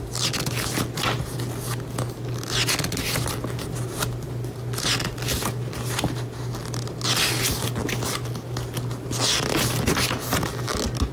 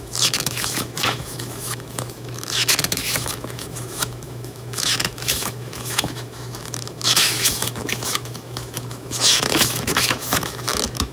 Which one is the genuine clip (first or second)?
first